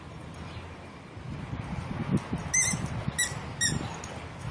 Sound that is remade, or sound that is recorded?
recorded